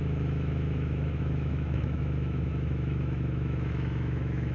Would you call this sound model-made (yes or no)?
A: yes